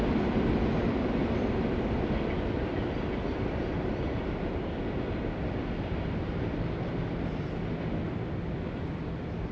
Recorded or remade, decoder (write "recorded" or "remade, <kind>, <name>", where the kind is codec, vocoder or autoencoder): recorded